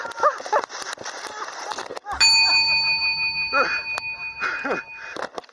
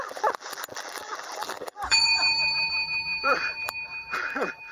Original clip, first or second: first